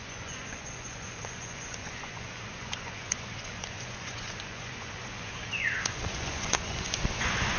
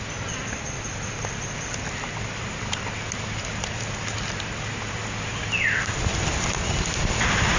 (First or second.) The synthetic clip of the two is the first